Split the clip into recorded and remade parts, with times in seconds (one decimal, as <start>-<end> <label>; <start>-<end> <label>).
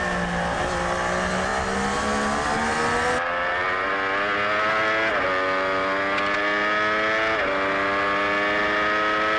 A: 0.0-9.4 recorded